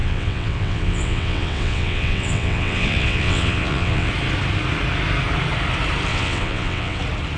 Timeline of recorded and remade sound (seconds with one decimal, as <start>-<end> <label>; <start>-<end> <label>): 0.0-4.1 remade; 4.1-6.1 recorded; 6.1-7.0 remade; 7.0-7.4 recorded